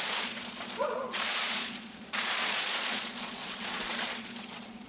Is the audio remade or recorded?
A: remade